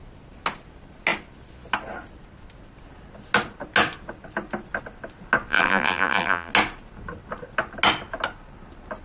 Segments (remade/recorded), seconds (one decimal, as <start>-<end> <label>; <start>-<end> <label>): 0.0-5.5 recorded; 5.5-6.5 remade; 6.5-9.0 recorded

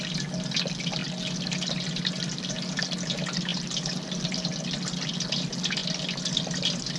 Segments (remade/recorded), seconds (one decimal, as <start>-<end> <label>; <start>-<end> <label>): 0.0-7.0 recorded